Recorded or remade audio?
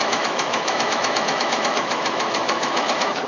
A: remade